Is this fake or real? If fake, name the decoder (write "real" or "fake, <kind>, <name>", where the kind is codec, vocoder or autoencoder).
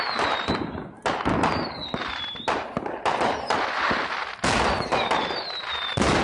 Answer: real